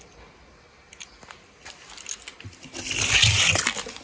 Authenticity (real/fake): real